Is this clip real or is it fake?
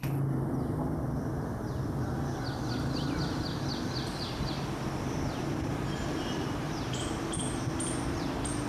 real